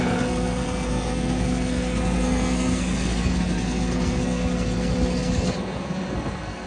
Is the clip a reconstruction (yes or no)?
yes